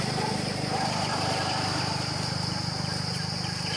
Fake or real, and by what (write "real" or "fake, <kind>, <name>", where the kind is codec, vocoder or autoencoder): real